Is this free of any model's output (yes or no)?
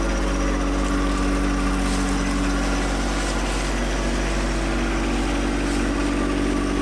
yes